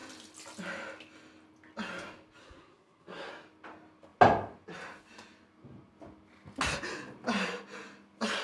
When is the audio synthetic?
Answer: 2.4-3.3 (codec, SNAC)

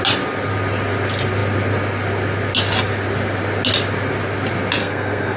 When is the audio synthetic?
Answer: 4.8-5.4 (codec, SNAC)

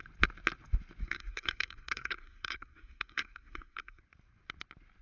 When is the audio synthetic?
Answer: 1.0-4.0 (codec, SNAC)